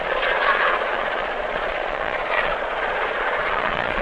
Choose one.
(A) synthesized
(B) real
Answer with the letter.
A